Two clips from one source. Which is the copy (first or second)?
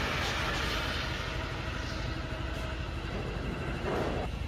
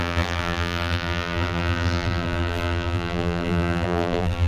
second